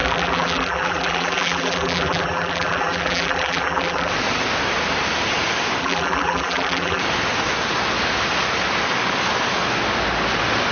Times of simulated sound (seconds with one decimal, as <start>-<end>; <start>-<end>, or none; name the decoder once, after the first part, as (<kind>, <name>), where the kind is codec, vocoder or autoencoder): 0.0-4.1 (vocoder, BigVGAN v2); 5.8-7.0